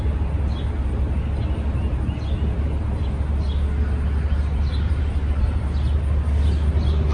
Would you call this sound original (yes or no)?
yes